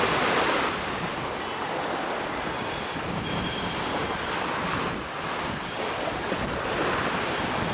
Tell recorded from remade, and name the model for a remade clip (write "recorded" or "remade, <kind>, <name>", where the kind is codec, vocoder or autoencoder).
recorded